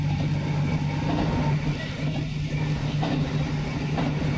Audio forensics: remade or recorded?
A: recorded